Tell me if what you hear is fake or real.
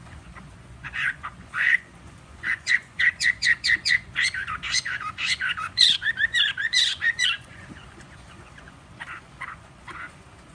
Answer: fake